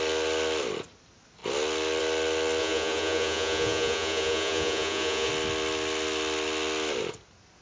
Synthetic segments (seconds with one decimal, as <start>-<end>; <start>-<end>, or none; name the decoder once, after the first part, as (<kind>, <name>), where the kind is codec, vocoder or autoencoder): 2.6-5.3 (vocoder, Vocos)